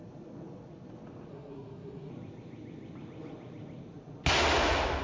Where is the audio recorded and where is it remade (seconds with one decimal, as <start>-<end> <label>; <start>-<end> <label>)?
0.0-1.3 recorded; 1.3-2.1 remade; 2.1-5.0 recorded